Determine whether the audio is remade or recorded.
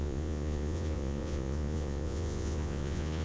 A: remade